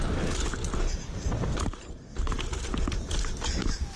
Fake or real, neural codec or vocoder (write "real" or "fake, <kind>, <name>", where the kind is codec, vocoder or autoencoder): real